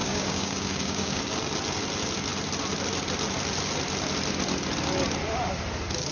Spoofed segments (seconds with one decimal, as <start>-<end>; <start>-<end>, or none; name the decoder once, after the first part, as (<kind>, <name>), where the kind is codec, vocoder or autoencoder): 0.0-1.2 (codec, DAC)